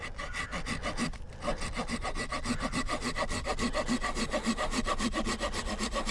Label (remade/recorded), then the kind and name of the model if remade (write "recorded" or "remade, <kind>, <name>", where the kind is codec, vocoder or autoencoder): recorded